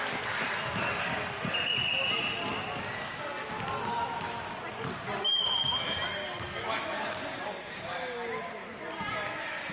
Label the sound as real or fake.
real